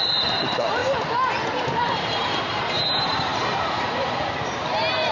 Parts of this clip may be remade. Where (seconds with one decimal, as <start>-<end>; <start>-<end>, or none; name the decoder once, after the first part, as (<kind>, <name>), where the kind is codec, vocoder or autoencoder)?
0.0-0.8 (vocoder, BigVGAN v2); 1.8-5.1